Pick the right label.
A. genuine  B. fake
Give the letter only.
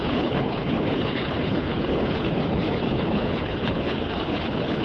B